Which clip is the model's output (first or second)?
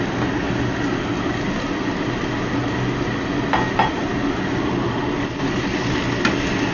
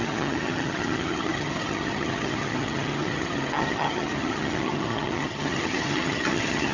second